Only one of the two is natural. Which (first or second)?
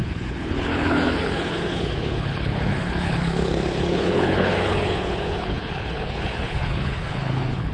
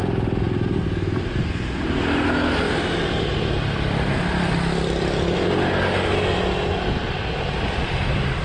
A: second